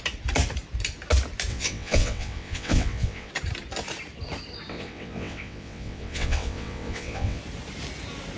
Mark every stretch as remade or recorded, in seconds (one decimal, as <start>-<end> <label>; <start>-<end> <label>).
0.0-1.5 recorded; 1.5-3.3 remade; 3.3-4.7 recorded; 4.7-7.4 remade; 7.4-8.4 recorded